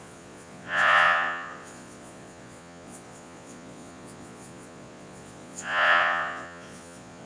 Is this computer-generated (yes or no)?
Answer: yes